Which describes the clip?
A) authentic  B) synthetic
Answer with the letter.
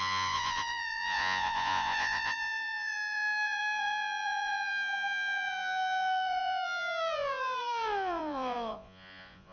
B